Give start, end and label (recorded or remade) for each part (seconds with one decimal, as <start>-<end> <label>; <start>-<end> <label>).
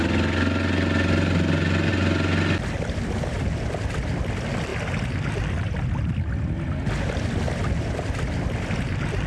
0.0-9.3 recorded